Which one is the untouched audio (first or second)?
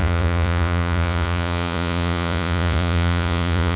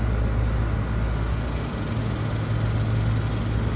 second